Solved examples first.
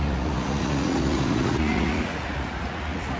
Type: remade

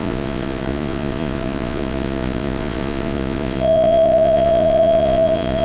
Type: remade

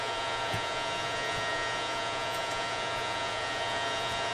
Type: remade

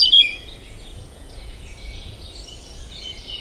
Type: remade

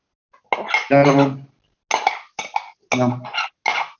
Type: recorded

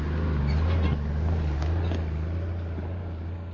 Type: recorded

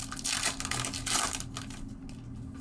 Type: recorded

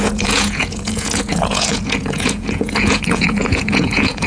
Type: remade